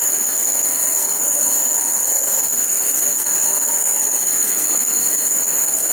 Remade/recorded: remade